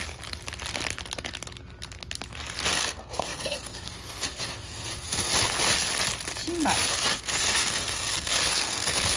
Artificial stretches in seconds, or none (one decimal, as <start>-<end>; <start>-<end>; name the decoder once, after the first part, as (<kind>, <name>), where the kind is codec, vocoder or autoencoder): 2.7-5.3 (codec, SNAC); 6.9-9.2